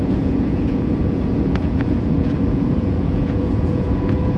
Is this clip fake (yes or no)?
yes